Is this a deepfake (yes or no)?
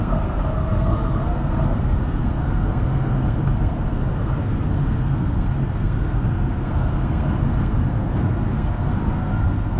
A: yes